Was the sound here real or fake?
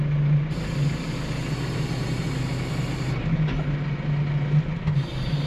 real